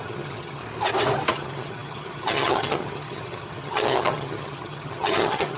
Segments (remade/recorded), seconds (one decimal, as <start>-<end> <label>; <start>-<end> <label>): 0.0-0.6 remade; 0.6-1.3 recorded; 1.3-5.6 remade